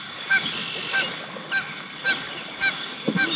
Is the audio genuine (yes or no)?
yes